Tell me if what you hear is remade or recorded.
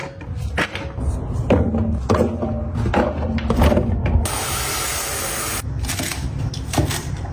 recorded